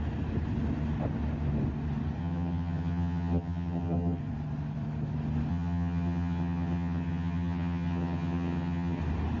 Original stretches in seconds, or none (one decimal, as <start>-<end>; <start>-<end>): 0.0-2.2; 4.2-5.5; 9.0-9.4